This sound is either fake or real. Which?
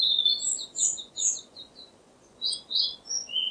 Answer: fake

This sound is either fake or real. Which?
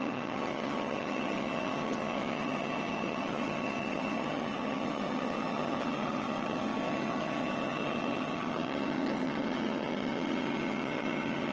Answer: fake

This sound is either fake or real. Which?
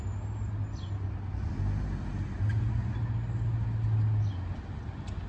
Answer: real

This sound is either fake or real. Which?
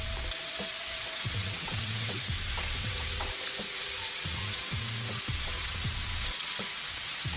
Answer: fake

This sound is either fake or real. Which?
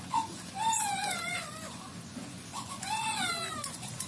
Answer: fake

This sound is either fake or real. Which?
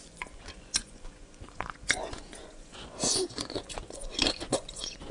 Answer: fake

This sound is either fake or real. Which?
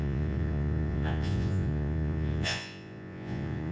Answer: fake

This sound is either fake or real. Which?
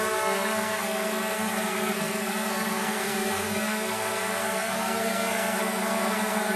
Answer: fake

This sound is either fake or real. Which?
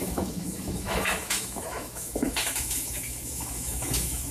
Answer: fake